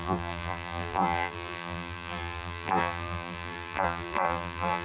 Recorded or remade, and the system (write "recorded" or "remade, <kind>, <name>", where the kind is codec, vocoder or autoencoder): remade, vocoder, BigVGAN v2